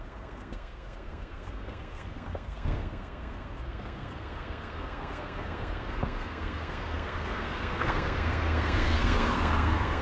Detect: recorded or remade remade